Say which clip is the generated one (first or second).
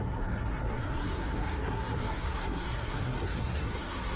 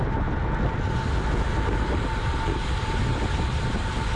first